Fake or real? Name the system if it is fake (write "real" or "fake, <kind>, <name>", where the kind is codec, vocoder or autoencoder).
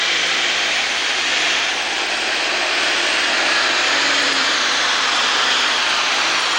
fake, vocoder, BigVGAN v2